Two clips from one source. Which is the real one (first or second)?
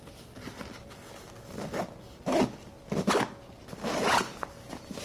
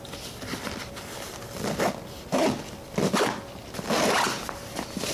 first